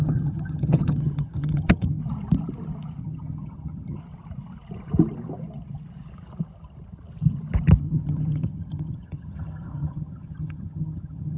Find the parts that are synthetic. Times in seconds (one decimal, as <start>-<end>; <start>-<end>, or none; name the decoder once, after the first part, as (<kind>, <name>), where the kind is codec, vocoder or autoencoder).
0.0-2.0 (vocoder, HiFi-GAN); 3.0-4.0; 7.8-11.4